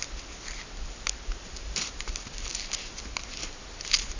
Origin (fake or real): real